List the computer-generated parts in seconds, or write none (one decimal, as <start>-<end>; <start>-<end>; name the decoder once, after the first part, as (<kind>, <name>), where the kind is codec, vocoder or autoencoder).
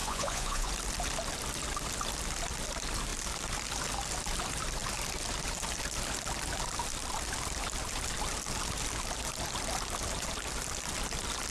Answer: 0.0-0.7 (vocoder, Vocos)